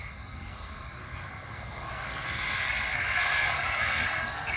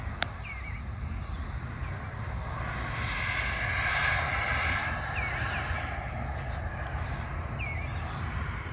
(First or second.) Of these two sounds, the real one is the second